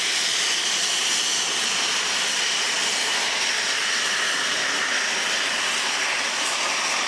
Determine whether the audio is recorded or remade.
recorded